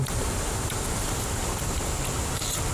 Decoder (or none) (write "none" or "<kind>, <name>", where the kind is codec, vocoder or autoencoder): none